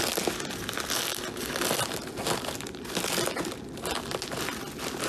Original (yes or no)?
yes